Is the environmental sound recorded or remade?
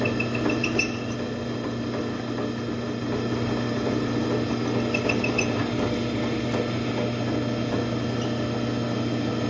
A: recorded